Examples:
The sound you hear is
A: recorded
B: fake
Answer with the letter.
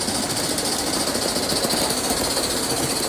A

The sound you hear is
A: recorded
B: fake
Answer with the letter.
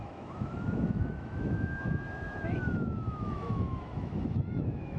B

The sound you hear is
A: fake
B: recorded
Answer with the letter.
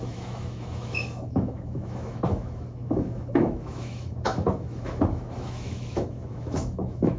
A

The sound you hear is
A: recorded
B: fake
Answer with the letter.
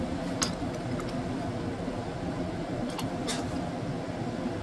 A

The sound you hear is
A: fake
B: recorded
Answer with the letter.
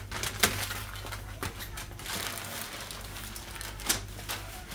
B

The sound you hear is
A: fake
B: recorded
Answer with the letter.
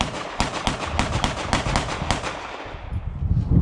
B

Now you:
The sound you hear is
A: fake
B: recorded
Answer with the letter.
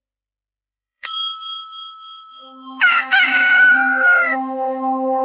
A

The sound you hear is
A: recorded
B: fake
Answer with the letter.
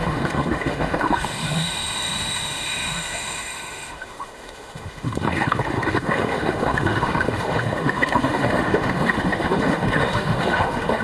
B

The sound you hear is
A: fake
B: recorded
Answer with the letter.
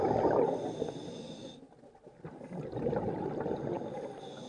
B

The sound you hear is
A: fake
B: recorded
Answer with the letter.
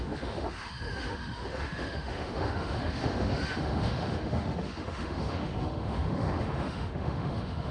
A